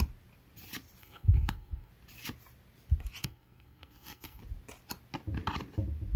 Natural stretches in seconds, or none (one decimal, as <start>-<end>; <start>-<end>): 0.0-1.0; 1.9-3.2; 4.4-6.2